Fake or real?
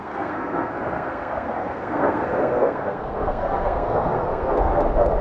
fake